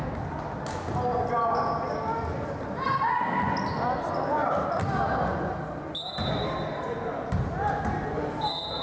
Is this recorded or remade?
recorded